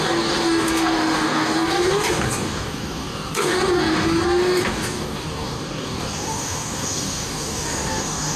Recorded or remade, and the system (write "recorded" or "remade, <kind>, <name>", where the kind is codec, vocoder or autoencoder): remade, codec, DAC